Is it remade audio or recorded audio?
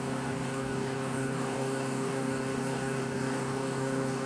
remade